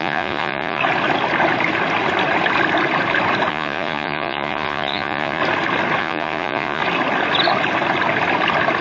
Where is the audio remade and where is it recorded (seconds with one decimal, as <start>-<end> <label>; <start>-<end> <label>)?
0.0-0.8 remade; 0.8-3.5 recorded; 3.5-5.4 remade; 5.4-6.0 recorded; 6.0-6.8 remade; 6.8-8.8 recorded